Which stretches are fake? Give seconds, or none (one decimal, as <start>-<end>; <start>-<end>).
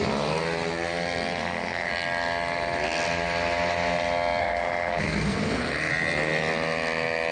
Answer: 1.4-1.9; 4.4-5.9